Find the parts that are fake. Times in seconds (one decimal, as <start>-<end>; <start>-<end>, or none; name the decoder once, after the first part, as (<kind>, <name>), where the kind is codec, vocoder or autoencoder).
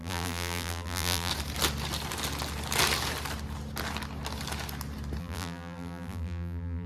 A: 0.0-1.3 (vocoder, BigVGAN v2); 5.2-6.9